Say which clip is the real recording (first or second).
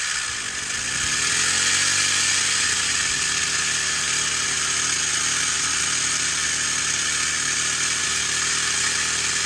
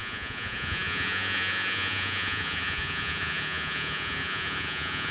first